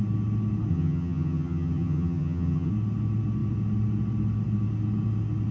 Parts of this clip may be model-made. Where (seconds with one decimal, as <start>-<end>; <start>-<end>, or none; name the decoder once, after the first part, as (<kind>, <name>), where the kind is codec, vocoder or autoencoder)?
0.7-2.7 (vocoder, HiFi-GAN)